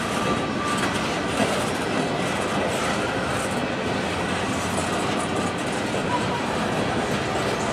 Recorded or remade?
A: recorded